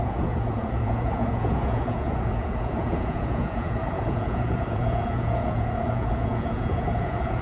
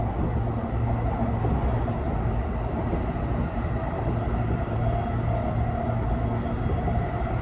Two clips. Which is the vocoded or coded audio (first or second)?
first